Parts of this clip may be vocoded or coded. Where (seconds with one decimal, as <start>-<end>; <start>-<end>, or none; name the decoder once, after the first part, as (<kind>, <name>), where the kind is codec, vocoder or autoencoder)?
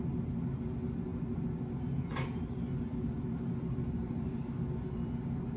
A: none